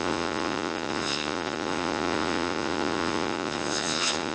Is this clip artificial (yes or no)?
yes